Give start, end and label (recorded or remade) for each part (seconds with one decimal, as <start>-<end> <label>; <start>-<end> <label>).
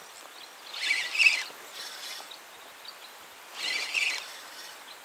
0.0-5.0 recorded